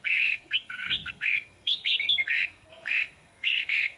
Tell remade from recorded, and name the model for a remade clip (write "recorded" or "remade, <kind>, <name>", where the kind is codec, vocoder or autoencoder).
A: remade, codec, SNAC